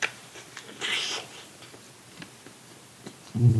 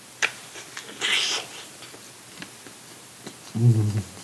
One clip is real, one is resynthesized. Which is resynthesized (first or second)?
first